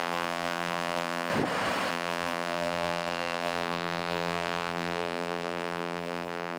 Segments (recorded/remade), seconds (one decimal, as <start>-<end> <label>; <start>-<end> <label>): 0.0-1.3 remade; 1.3-1.9 recorded; 1.9-6.6 remade